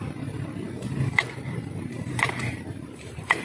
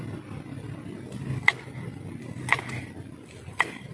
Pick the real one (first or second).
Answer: second